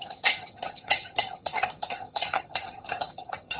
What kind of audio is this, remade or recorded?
remade